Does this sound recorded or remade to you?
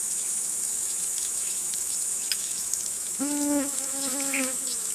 remade